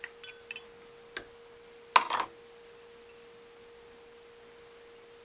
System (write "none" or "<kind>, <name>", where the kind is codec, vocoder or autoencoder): none